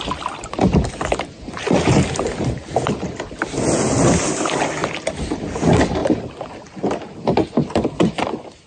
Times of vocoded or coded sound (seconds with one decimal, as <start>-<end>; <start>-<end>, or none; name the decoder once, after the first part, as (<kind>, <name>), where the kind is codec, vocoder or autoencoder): none